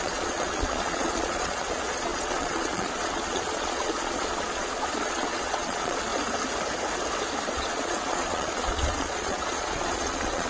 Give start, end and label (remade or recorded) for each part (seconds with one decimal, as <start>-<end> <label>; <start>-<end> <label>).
0.0-6.1 remade; 6.1-7.5 recorded; 7.5-10.5 remade